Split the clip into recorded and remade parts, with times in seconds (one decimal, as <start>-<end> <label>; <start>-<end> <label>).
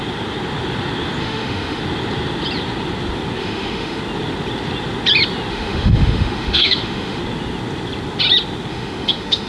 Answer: 0.0-1.2 recorded; 1.2-1.8 remade; 1.8-3.4 recorded; 3.4-4.0 remade; 4.0-5.5 recorded; 5.5-7.2 remade; 7.2-8.7 recorded; 8.7-9.5 remade